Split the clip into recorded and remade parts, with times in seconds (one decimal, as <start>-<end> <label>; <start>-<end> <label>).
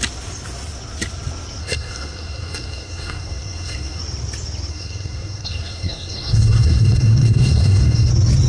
0.0-1.6 recorded; 1.6-4.0 remade; 4.0-4.7 recorded; 4.7-8.1 remade; 8.1-8.5 recorded